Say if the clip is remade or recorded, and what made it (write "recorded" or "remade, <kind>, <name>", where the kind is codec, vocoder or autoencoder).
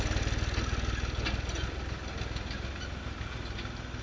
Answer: recorded